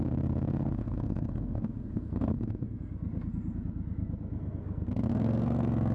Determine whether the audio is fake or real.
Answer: fake